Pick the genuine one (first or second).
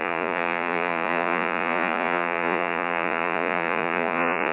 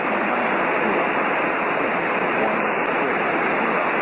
second